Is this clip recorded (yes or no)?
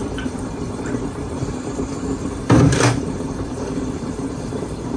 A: no